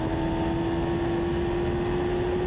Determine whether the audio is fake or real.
real